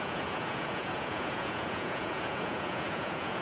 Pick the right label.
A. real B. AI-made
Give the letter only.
B